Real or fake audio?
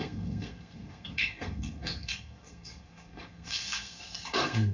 fake